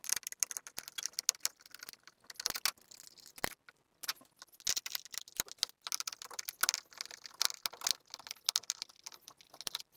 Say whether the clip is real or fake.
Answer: real